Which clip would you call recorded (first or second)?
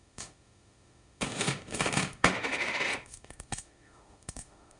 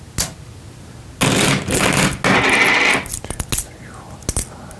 second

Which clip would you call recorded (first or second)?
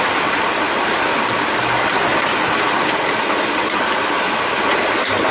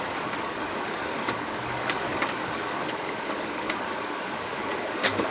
first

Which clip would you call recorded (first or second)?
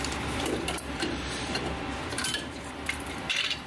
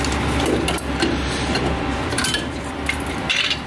second